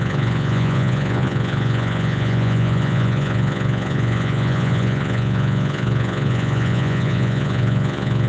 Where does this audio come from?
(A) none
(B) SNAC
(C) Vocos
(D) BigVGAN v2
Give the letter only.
C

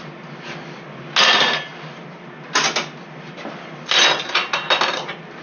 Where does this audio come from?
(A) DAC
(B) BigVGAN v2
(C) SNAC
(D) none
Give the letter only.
D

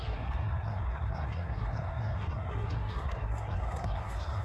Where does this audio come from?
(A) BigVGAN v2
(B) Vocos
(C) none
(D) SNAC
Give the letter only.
D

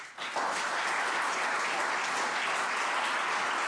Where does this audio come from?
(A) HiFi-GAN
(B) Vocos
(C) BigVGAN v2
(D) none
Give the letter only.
D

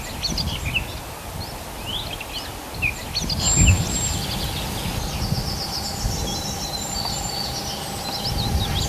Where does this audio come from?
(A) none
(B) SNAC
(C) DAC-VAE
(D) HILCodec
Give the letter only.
A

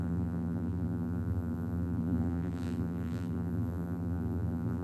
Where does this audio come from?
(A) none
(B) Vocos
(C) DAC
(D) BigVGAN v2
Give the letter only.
D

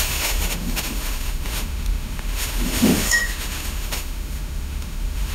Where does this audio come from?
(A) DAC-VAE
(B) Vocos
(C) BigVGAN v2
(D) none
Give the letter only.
A